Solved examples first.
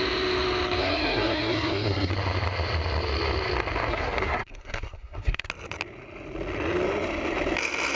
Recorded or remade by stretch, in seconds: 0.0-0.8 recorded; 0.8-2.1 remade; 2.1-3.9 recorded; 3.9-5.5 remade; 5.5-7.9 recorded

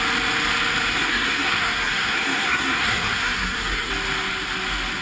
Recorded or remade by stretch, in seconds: 0.0-0.9 recorded; 0.9-3.9 remade; 3.9-5.0 recorded

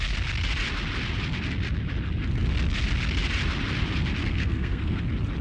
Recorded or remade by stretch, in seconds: 0.0-4.2 recorded; 4.2-5.0 remade; 5.0-5.4 recorded

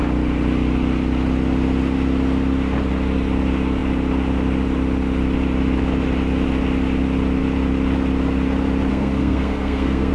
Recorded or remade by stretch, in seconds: 0.0-8.9 recorded; 8.9-10.1 remade

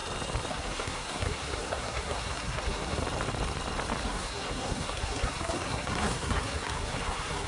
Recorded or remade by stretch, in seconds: 0.0-0.5 recorded; 0.5-3.0 remade; 3.0-4.0 recorded; 4.0-7.5 remade

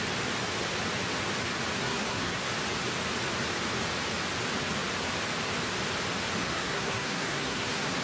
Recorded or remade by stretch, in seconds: 0.0-1.8 recorded; 1.8-2.5 remade; 2.5-6.4 recorded; 6.4-8.0 remade

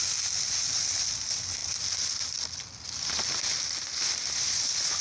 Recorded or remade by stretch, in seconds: 0.0-5.0 recorded